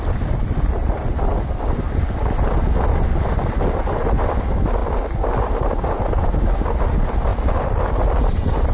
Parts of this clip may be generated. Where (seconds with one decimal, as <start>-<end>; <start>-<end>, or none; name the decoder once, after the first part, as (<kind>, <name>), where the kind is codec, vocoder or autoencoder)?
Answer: 6.2-6.7 (codec, DAC)